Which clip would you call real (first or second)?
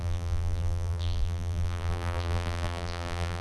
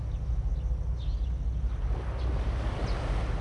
second